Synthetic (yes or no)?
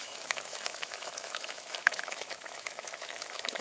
yes